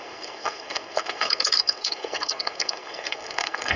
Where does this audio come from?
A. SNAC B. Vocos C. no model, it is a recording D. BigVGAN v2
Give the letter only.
A